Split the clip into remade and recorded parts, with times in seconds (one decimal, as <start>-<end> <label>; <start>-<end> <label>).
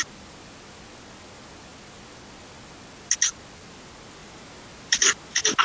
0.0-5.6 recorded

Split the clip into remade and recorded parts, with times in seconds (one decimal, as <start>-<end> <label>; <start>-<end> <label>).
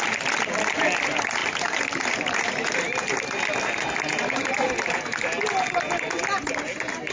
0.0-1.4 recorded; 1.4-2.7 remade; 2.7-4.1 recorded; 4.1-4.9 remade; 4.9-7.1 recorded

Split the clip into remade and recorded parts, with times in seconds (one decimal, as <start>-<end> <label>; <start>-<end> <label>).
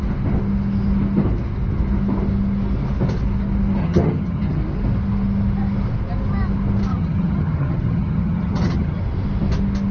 0.0-3.8 recorded; 3.8-4.6 remade; 4.6-6.9 recorded; 6.9-9.0 remade; 9.0-9.9 recorded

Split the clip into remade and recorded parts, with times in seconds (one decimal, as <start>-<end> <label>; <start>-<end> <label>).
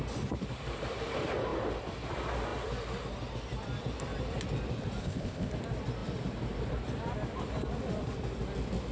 0.0-5.0 recorded; 5.0-5.5 remade; 5.5-8.9 recorded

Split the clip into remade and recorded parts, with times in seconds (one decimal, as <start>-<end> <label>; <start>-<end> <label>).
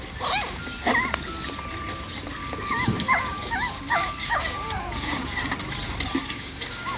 0.0-2.4 recorded; 2.4-5.5 remade; 5.5-6.2 recorded; 6.2-7.0 remade